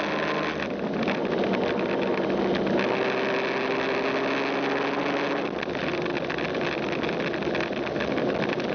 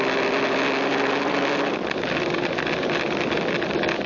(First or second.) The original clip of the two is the first